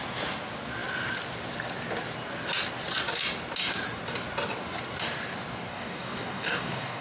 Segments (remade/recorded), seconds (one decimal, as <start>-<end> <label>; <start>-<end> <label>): 0.0-5.7 recorded; 5.7-7.0 remade